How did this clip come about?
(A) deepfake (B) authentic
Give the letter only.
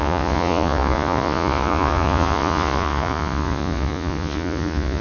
A